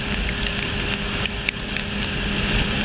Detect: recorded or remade recorded